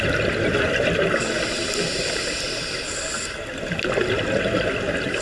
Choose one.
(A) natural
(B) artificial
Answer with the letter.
A